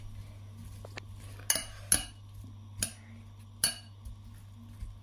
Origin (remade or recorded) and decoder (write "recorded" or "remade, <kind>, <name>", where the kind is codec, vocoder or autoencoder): recorded